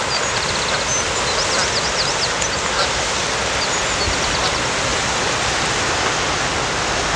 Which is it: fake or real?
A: real